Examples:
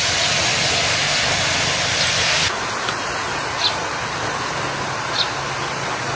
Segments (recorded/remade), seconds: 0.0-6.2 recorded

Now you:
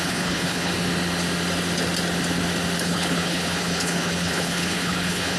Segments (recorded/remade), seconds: 0.0-0.7 remade; 0.7-2.8 recorded; 2.8-5.4 remade